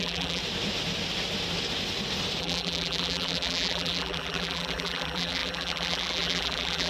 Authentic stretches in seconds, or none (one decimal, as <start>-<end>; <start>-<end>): 0.4-2.4

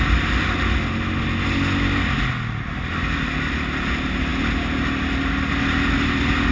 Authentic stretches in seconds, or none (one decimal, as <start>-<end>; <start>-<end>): 0.0-6.5